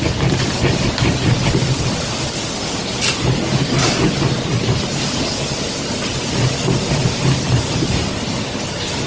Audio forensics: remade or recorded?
recorded